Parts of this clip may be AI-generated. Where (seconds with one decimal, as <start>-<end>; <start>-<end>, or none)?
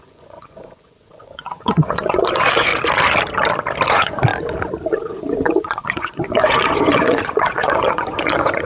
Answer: 0.0-2.7; 3.9-4.3; 4.9-8.6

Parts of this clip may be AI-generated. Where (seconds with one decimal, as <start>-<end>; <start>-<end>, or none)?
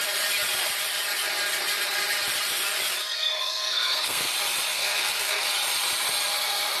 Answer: 3.0-4.3; 4.7-5.4